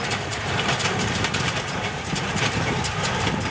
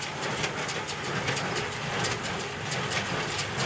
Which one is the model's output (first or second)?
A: first